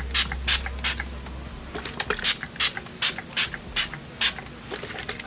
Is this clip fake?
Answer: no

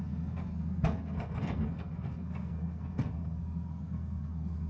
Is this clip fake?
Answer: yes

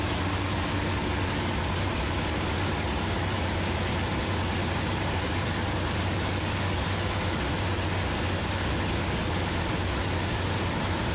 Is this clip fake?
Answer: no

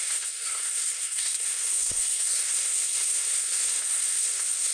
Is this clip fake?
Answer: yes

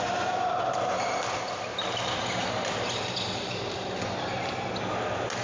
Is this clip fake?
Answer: no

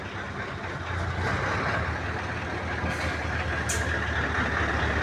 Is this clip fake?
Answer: no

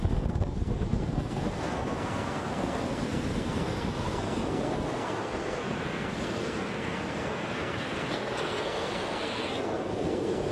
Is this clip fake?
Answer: yes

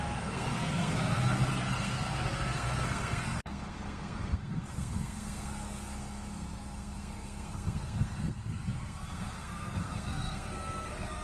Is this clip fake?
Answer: yes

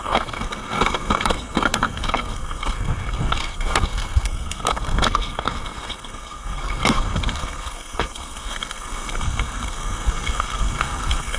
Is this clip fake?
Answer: yes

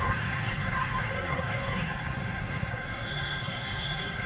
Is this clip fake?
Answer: yes